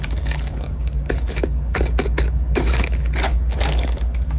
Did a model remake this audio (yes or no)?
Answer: yes